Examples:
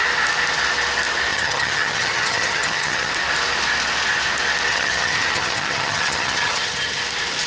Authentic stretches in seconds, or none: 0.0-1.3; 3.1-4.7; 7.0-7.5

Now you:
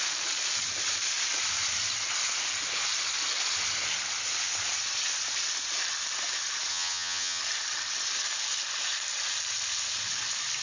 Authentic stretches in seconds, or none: 0.0-6.7; 7.4-10.6